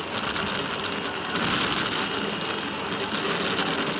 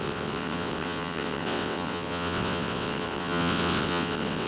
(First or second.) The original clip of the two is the first